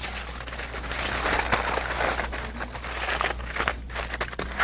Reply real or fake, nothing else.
real